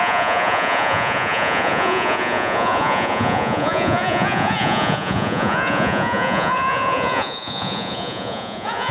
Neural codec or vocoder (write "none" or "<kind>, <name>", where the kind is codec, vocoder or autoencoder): vocoder, Vocos